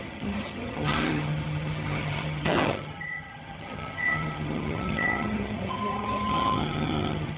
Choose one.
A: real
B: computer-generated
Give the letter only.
B